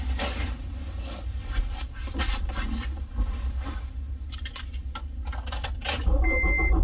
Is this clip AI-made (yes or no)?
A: no